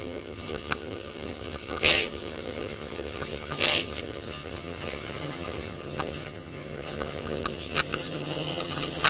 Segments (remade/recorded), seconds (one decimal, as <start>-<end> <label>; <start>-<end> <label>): 0.0-9.1 remade